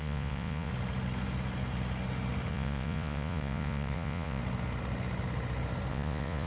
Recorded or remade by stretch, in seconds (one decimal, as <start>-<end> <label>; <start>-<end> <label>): 0.0-0.7 remade; 0.7-2.5 recorded; 2.5-4.4 remade; 4.4-5.9 recorded; 5.9-6.5 remade